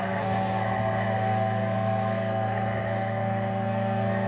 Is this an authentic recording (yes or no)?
no